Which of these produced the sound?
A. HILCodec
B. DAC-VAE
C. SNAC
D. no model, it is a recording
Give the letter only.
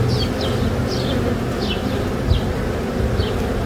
D